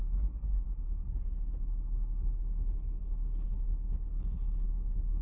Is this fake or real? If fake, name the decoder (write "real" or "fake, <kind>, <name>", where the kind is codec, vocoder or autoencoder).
real